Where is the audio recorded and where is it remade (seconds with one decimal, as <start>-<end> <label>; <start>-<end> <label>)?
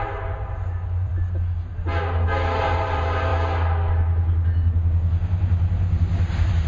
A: 0.0-1.1 remade; 1.1-2.6 recorded; 2.6-3.3 remade; 3.3-6.3 recorded; 6.3-6.7 remade